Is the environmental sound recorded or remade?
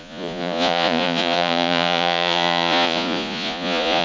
remade